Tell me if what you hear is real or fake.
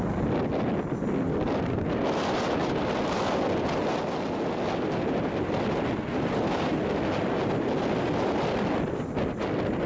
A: real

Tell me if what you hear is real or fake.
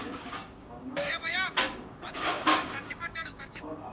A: fake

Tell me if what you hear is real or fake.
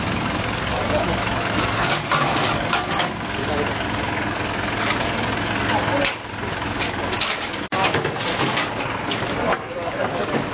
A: fake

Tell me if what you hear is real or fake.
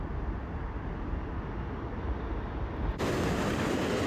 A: real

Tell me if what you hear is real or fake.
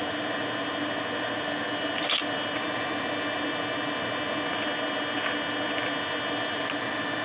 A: real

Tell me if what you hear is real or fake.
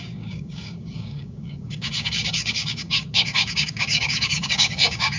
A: fake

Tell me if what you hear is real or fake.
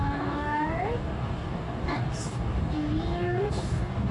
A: fake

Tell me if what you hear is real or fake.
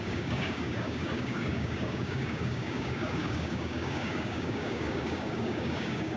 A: fake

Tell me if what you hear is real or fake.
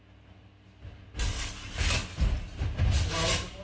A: real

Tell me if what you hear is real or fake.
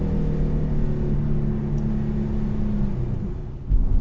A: real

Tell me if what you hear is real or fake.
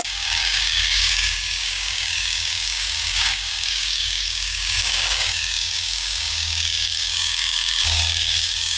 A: fake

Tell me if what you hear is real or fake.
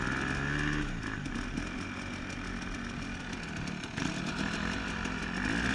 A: real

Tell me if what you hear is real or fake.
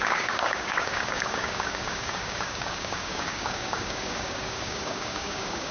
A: fake